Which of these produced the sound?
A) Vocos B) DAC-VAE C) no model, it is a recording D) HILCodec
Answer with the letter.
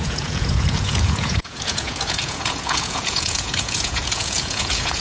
A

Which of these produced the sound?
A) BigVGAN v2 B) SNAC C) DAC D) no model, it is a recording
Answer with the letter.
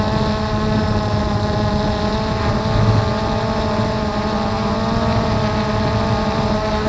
D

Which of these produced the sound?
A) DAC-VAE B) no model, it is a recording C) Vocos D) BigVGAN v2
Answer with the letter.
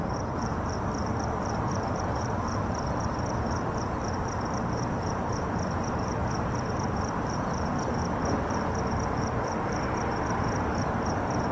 D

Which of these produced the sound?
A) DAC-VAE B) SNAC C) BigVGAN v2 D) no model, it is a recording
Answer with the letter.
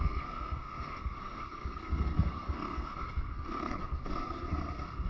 B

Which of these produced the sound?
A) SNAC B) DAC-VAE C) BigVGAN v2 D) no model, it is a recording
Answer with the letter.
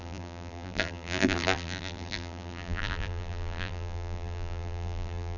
C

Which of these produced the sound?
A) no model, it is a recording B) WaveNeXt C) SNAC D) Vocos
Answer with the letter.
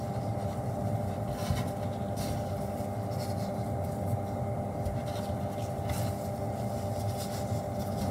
A